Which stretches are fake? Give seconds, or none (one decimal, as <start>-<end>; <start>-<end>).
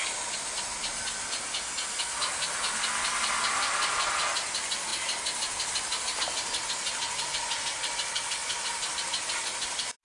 none